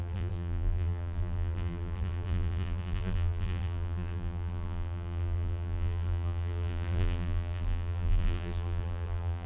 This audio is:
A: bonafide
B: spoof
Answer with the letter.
B